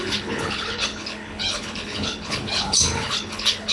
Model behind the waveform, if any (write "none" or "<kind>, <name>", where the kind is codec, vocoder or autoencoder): codec, HILCodec